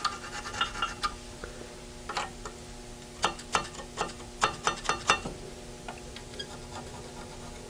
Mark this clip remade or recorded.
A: recorded